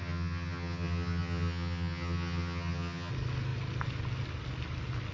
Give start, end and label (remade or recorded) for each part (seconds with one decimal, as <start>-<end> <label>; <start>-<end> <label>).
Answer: 0.0-3.1 remade; 3.1-5.1 recorded